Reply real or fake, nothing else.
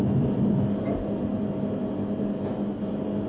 real